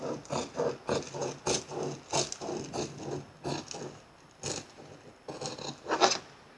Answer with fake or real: real